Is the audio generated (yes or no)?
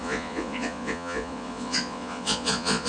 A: yes